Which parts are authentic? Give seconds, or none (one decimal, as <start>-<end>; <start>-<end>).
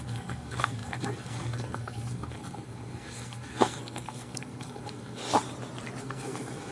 5.2-6.0